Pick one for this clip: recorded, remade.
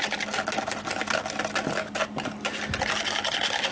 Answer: recorded